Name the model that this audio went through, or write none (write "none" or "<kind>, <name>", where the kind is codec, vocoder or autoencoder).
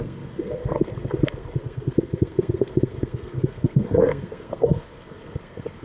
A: codec, SNAC